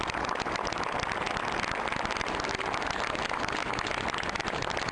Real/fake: real